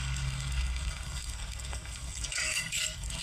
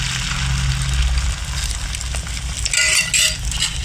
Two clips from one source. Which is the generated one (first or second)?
first